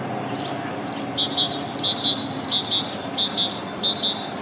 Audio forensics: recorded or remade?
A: recorded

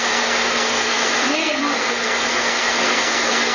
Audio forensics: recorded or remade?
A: remade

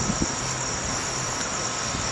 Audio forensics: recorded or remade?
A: recorded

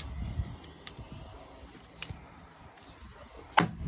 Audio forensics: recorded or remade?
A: recorded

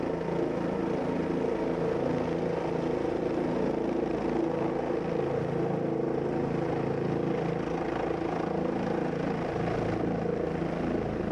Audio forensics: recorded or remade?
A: recorded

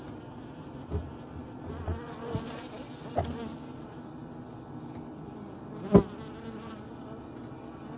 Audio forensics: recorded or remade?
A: recorded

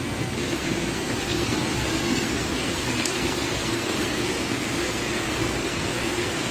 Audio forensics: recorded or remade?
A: remade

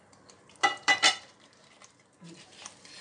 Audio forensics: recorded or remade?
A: recorded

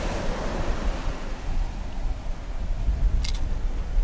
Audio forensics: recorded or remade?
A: recorded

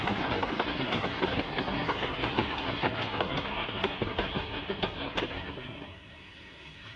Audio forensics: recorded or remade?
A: remade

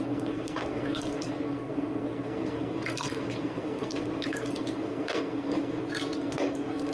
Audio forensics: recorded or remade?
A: remade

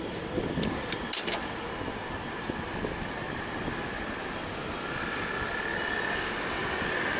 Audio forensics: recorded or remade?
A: recorded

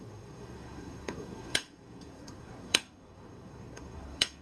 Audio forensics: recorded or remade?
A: remade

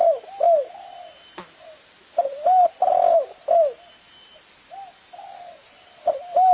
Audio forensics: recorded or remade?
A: recorded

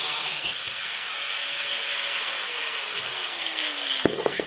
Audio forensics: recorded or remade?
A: remade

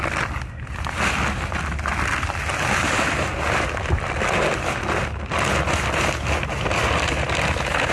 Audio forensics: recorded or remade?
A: recorded